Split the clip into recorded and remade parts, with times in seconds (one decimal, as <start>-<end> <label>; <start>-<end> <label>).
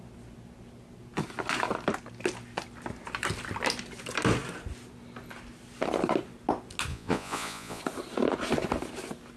0.0-6.9 recorded; 6.9-7.8 remade; 7.8-9.4 recorded